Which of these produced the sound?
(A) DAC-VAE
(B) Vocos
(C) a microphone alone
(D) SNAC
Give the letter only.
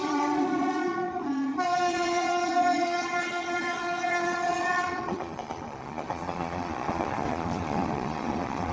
B